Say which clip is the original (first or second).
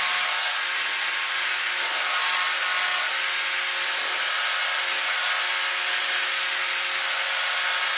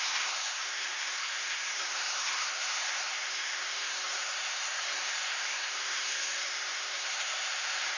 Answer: first